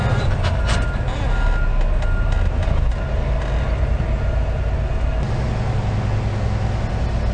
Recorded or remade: recorded